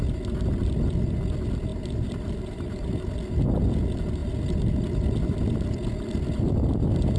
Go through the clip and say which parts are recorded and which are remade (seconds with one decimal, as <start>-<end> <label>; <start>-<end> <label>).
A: 0.0-1.7 recorded; 1.7-3.1 remade; 3.1-7.2 recorded